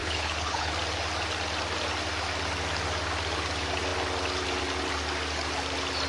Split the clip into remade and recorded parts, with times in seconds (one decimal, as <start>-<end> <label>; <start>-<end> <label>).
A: 0.0-0.7 remade; 0.7-6.1 recorded